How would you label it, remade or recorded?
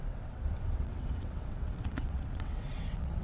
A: remade